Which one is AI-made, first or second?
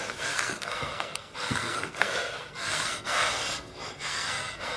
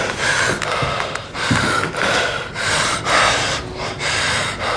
first